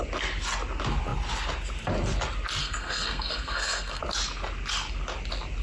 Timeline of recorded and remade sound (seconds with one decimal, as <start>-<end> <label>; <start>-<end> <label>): 0.0-2.6 recorded; 2.6-4.0 remade; 4.0-5.6 recorded